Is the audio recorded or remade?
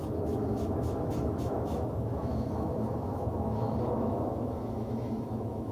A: remade